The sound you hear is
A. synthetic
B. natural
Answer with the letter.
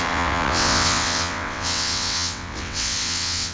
A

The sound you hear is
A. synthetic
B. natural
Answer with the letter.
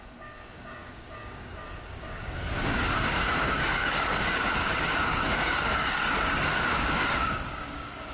A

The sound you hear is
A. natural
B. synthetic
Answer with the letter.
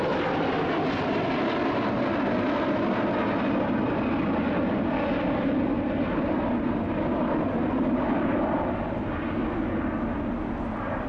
A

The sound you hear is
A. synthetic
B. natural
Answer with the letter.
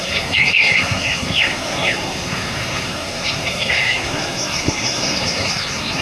A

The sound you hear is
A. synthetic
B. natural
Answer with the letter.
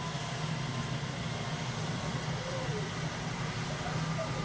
B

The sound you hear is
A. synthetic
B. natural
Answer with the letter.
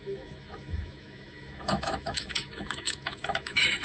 A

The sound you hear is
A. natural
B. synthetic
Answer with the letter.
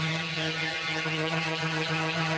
B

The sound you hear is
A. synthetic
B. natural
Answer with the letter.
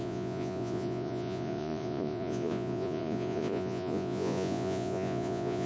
A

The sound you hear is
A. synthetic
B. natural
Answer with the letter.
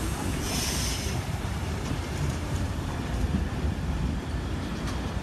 A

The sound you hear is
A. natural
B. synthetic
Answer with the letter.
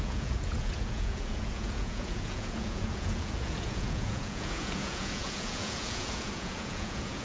B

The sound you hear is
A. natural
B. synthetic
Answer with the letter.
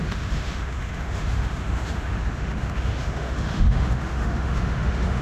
B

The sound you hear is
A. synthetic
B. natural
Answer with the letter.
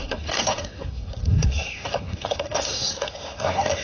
A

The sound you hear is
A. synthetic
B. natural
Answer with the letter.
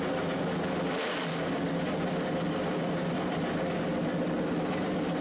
B